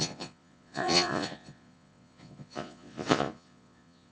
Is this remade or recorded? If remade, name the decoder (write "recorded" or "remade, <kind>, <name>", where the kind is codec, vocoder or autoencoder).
remade, vocoder, Vocos